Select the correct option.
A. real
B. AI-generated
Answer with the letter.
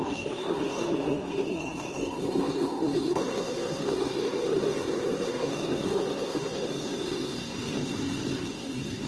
B